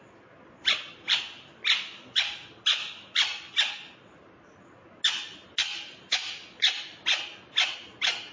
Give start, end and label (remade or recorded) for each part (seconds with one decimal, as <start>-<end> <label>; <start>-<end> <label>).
0.0-8.3 recorded

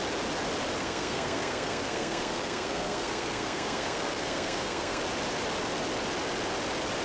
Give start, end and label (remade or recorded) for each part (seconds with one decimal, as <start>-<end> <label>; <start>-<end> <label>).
0.0-0.8 recorded; 0.8-5.0 remade; 5.0-7.0 recorded

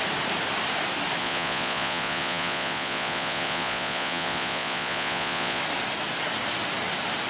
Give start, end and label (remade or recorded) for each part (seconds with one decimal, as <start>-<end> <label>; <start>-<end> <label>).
0.0-1.2 recorded; 1.2-5.6 remade; 5.6-7.3 recorded